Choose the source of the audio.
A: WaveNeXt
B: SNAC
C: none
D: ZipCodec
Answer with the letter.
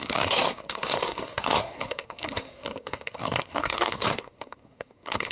B